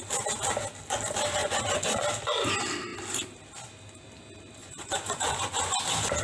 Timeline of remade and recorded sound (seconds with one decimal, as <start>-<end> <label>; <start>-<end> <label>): 0.0-1.4 recorded; 1.4-2.0 remade; 2.0-4.6 recorded; 4.6-5.7 remade; 5.7-6.2 recorded